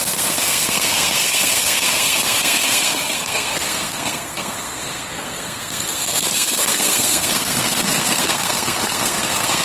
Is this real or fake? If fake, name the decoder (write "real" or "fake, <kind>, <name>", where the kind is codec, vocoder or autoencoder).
fake, codec, SNAC